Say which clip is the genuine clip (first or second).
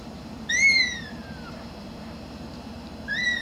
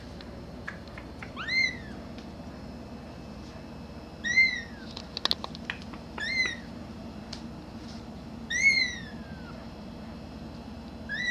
second